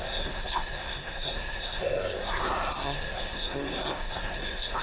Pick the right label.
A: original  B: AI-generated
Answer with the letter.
B